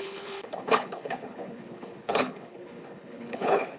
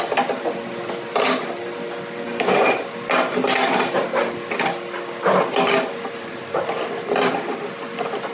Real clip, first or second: second